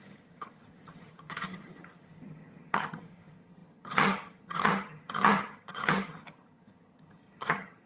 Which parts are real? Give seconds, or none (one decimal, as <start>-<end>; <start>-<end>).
none